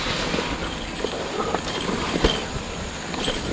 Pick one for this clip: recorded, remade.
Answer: recorded